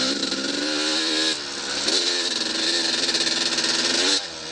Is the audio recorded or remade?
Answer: recorded